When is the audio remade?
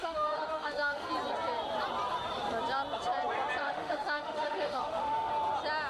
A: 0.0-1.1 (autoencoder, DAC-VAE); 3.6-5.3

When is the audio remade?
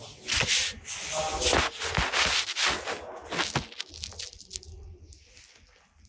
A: none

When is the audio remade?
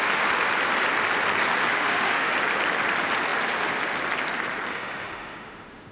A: 1.6-2.3 (autoencoder, DAC-VAE); 4.7-5.9